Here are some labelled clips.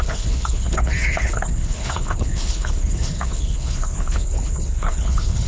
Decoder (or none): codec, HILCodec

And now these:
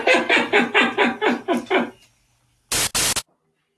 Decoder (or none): none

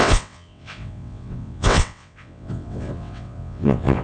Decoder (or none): vocoder, WaveNeXt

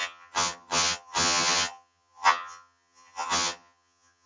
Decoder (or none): vocoder, HiFi-GAN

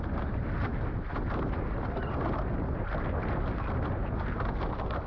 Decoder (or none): none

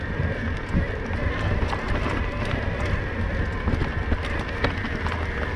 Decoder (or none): none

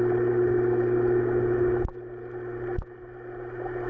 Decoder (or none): none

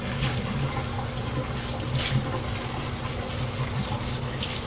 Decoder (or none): none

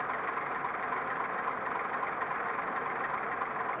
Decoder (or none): none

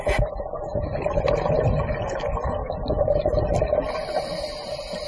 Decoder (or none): none